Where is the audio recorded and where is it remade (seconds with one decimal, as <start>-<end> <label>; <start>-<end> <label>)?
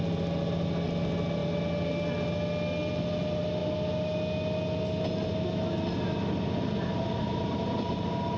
0.0-8.4 recorded